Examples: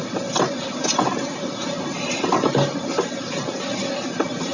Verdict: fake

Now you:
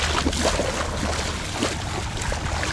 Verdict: real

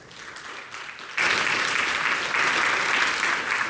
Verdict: real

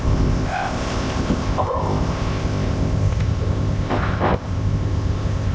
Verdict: fake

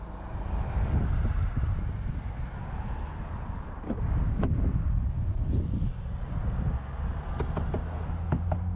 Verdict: real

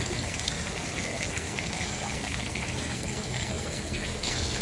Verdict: fake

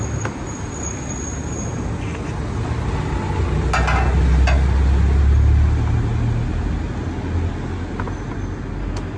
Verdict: real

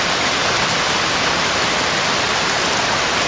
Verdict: real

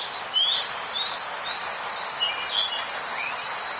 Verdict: real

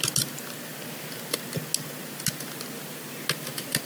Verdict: real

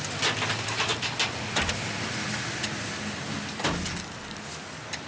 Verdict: real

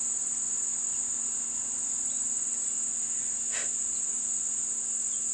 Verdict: real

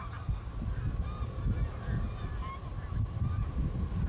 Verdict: real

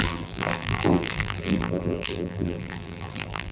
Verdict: fake